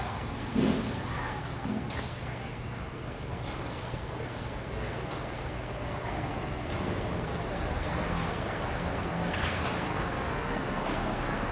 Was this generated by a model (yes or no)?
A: yes